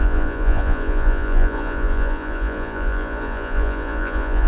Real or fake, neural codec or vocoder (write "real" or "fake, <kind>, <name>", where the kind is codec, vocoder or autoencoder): fake, vocoder, Vocos